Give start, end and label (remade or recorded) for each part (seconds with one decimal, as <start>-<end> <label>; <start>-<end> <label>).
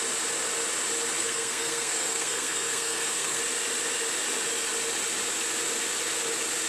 0.0-1.2 recorded; 1.2-3.4 remade; 3.4-6.7 recorded